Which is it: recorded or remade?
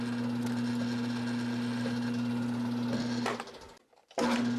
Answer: recorded